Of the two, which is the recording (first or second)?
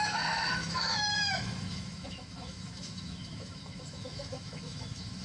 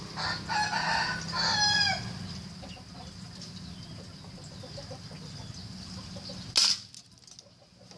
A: second